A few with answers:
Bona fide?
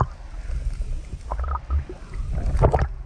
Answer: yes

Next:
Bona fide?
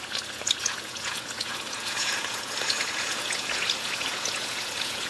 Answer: no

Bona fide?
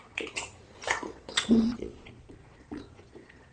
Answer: no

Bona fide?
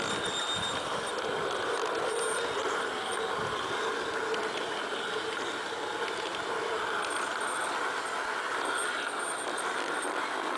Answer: yes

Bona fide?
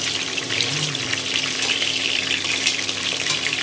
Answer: no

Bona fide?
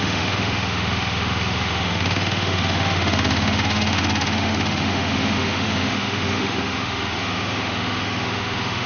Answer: no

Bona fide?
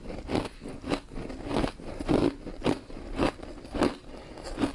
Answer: yes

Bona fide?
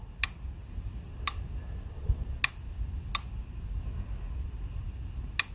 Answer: yes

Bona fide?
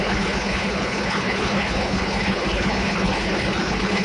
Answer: no